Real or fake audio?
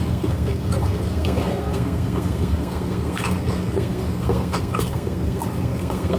fake